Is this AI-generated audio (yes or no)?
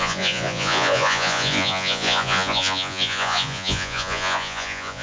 yes